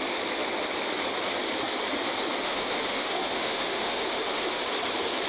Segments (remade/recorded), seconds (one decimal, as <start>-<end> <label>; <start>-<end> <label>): 0.0-2.4 recorded; 2.4-4.6 remade; 4.6-5.3 recorded